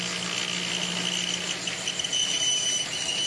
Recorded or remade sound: recorded